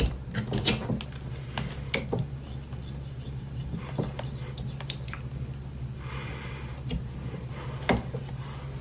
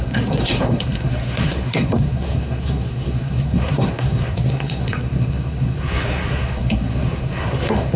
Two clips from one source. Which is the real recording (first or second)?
first